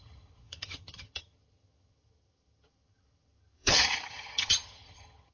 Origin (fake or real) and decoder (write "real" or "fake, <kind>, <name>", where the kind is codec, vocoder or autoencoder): fake, vocoder, HiFi-GAN